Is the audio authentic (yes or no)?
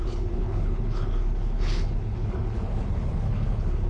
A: no